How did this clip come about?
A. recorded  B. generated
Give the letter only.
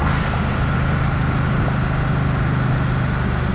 A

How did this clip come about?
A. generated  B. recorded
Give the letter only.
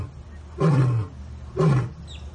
B